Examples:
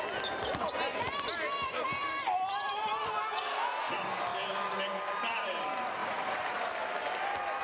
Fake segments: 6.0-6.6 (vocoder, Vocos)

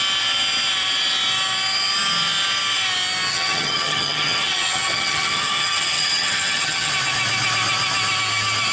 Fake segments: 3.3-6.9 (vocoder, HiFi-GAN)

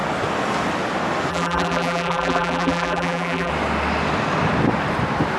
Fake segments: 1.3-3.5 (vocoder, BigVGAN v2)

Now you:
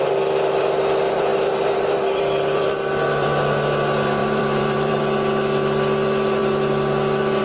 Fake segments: 1.3-3.3 (vocoder, BigVGAN v2); 4.2-5.0

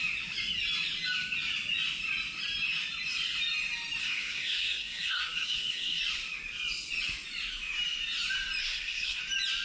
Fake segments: 4.0-6.0 (codec, SNAC); 8.6-9.2

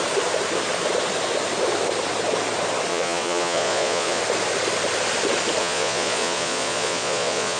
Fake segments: 2.9-4.2 (vocoder, Vocos); 5.6-7.6